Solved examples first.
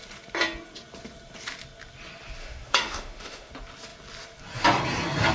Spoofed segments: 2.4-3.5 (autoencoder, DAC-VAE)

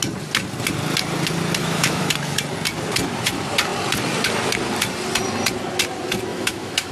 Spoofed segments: 1.6-2.1 (autoencoder, DAC-VAE); 6.3-6.9

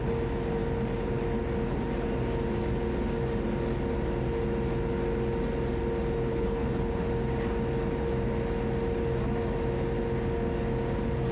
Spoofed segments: 6.3-7.1 (codec, HILCodec)